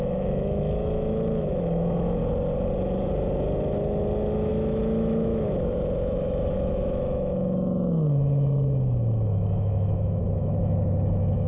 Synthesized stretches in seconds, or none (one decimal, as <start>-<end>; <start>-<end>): 0.0-2.2; 4.5-11.5